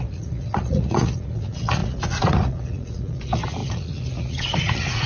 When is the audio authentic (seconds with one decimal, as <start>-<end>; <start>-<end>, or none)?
none